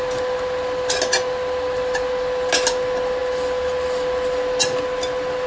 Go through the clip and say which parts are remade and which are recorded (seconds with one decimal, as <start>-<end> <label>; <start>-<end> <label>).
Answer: 0.0-5.5 recorded